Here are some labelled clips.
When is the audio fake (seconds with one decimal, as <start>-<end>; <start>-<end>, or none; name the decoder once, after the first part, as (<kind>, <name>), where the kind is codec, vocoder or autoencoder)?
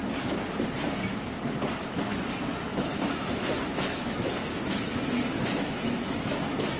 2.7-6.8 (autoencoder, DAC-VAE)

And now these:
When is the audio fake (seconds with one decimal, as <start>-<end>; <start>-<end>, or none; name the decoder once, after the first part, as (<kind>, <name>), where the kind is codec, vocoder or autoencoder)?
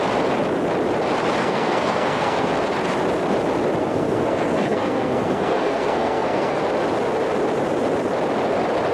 1.4-2.5 (codec, SNAC); 3.8-6.6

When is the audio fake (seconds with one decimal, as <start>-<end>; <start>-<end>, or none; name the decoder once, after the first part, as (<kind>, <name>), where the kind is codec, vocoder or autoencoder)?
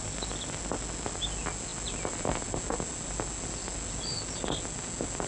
none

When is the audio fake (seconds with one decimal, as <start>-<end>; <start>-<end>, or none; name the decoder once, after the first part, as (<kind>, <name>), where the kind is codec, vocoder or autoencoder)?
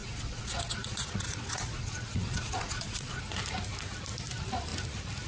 0.0-3.2 (vocoder, Vocos)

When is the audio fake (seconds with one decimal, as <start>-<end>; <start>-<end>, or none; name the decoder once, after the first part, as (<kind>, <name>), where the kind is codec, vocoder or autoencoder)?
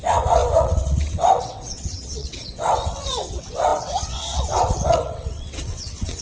0.0-6.2 (vocoder, WaveNeXt)